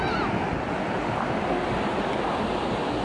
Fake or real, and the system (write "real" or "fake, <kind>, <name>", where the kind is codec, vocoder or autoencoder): real